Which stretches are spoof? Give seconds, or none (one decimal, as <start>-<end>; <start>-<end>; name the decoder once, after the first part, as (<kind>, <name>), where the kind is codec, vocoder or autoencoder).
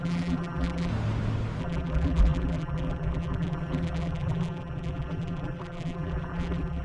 0.0-0.9 (vocoder, BigVGAN v2); 1.6-6.8